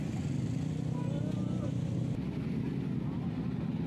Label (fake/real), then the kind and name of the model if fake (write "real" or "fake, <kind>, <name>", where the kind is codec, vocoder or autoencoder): real